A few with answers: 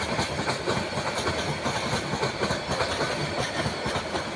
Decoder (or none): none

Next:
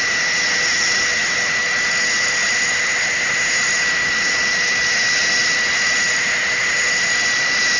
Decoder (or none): none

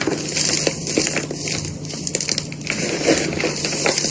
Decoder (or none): none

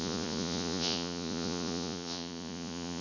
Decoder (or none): vocoder, Vocos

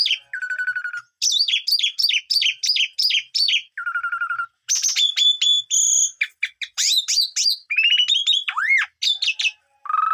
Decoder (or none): none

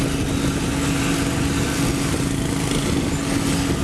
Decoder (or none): none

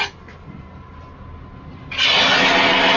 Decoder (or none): none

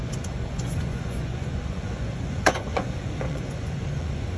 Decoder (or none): vocoder, Vocos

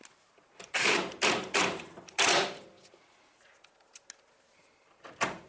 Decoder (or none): none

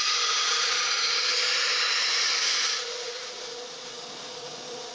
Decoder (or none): vocoder, Vocos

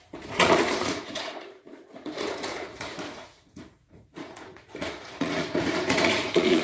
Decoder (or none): vocoder, Vocos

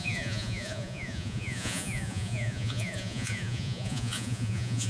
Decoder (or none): vocoder, Vocos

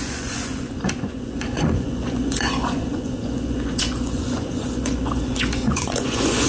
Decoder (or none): vocoder, Vocos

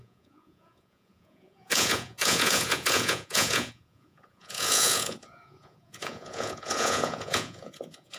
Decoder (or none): vocoder, Vocos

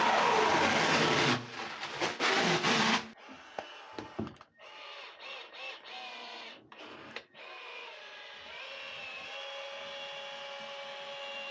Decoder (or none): none